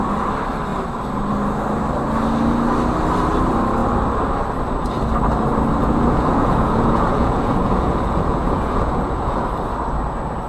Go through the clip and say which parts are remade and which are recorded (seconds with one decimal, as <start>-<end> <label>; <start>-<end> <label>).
0.0-5.8 recorded; 5.8-9.4 remade; 9.4-10.5 recorded